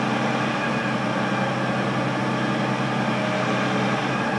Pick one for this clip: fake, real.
real